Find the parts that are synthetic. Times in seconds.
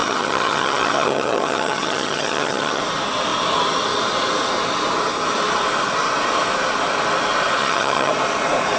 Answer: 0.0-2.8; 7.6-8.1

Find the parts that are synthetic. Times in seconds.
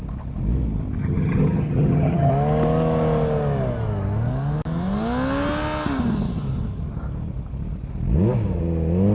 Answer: 1.0-2.3